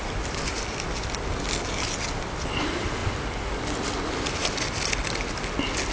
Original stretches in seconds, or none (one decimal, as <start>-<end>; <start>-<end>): 0.0-5.9